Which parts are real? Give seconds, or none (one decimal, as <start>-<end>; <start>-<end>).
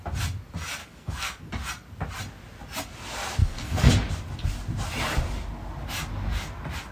0.0-0.8; 1.5-3.4; 3.9-6.9